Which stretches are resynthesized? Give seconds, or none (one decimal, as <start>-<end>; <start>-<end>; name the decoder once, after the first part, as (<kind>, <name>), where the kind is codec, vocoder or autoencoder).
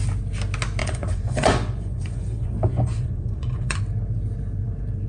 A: 0.8-3.8 (vocoder, Vocos)